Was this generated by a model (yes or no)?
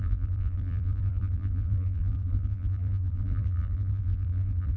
yes